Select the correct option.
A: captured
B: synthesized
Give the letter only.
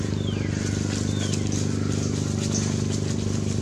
A